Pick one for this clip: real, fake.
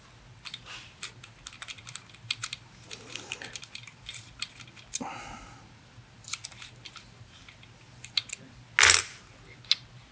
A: real